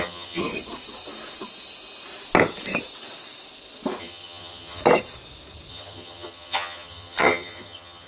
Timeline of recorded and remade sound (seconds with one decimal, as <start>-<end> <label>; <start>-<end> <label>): 0.0-0.4 remade; 0.4-4.0 recorded; 4.0-4.8 remade; 4.8-5.7 recorded; 5.7-8.1 remade